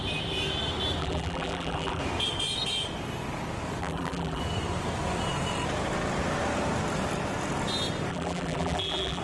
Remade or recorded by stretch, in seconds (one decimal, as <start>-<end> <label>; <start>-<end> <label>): 0.0-1.0 recorded; 1.0-2.0 remade; 2.0-3.8 recorded; 3.8-4.4 remade; 4.4-8.1 recorded; 8.1-9.2 remade